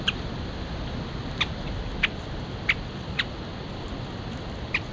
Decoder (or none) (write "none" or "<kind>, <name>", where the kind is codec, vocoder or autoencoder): none